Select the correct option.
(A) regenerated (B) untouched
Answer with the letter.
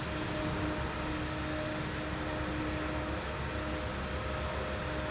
B